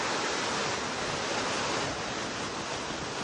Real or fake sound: real